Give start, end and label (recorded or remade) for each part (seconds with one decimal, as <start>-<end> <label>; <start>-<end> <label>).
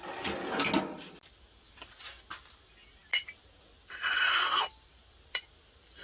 0.0-6.0 recorded